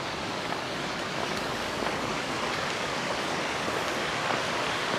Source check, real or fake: fake